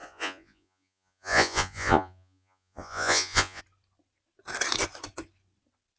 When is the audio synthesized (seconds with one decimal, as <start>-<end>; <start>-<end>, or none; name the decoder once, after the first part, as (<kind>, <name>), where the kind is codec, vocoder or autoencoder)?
0.0-3.6 (vocoder, Vocos)